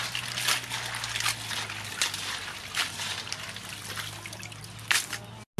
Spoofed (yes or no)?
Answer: no